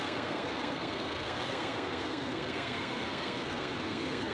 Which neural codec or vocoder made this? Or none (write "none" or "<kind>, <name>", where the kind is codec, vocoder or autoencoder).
codec, SNAC